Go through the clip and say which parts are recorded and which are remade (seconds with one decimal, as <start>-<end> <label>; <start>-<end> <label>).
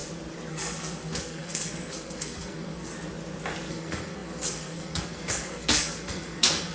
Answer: 0.0-0.5 recorded; 0.5-2.9 remade; 2.9-3.7 recorded; 3.7-6.7 remade